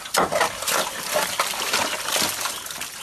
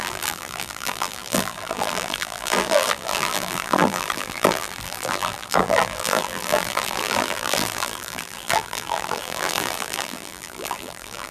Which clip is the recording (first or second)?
first